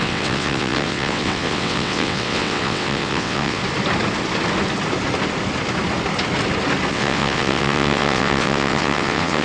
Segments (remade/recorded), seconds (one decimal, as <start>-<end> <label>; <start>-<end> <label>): 0.0-3.6 remade; 3.6-6.9 recorded; 6.9-9.4 remade